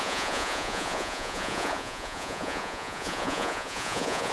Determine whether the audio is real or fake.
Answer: fake